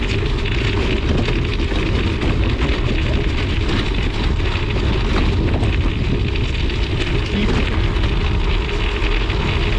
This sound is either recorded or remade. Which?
recorded